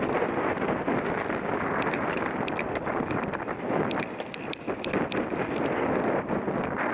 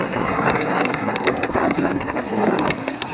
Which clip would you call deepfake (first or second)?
second